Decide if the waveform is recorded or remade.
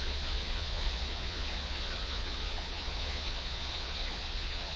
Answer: remade